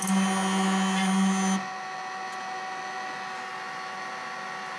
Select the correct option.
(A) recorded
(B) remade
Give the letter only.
A